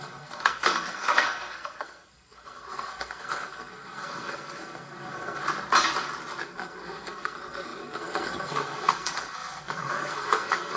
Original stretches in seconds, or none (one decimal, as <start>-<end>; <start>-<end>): 5.4-6.4